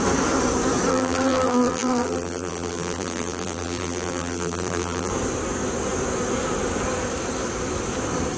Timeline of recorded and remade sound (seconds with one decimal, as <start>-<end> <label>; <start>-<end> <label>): 0.0-0.9 recorded; 0.9-5.1 remade; 5.1-8.4 recorded